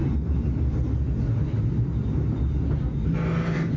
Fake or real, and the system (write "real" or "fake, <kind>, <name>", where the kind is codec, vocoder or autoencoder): real